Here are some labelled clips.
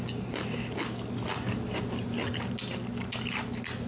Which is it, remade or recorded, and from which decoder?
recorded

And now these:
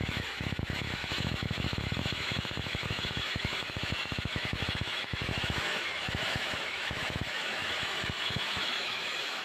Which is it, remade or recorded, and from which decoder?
remade, autoencoder, DAC-VAE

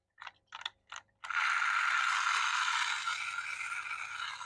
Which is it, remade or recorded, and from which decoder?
recorded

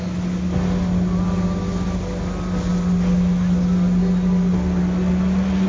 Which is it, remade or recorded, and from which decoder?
recorded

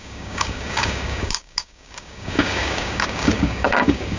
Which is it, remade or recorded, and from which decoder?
remade, codec, DAC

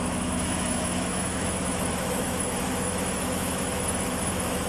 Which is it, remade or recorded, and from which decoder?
remade, autoencoder, DAC-VAE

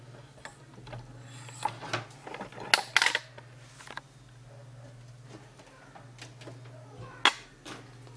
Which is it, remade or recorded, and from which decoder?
recorded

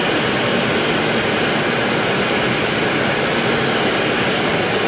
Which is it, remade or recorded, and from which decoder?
recorded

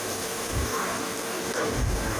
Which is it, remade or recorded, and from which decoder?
remade, codec, DAC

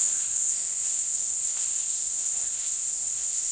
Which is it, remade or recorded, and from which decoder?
remade, codec, ZipCodec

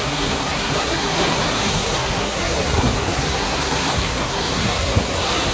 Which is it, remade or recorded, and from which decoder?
remade, codec, SNAC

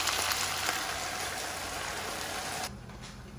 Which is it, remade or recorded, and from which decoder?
recorded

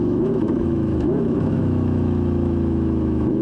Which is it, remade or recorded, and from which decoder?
remade, autoencoder, DAC-VAE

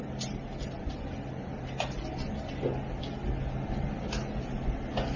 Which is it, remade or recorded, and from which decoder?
recorded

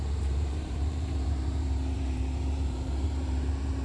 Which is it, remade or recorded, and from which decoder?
remade, vocoder, BigVGAN v2